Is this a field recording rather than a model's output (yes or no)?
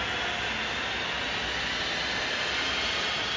yes